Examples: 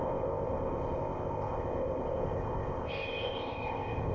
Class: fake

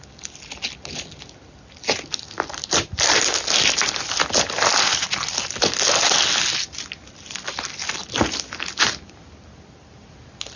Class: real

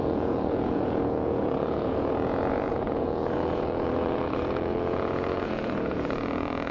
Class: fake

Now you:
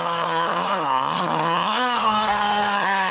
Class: fake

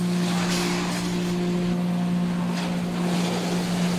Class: real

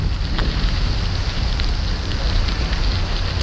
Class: real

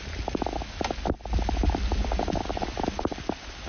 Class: real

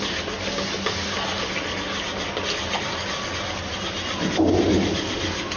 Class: real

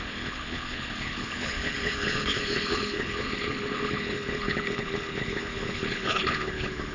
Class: fake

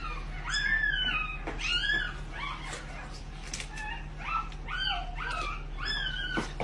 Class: real